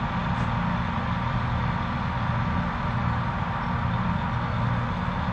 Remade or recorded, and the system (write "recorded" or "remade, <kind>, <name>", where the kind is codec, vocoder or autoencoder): recorded